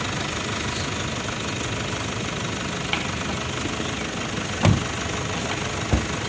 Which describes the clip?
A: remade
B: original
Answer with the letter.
B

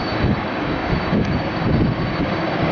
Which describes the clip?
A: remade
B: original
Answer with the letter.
A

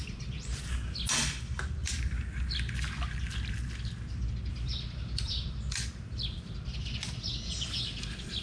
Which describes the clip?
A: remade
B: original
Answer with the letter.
B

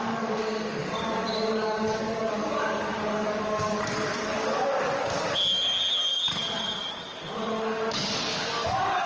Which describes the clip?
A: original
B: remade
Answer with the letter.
B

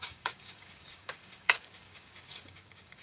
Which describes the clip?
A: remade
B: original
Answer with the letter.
A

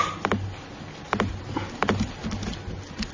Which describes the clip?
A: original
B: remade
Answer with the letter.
A